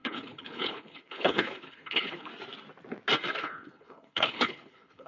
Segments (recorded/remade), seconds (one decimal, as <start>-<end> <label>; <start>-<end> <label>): 0.0-2.3 remade; 2.3-3.4 recorded; 3.4-5.1 remade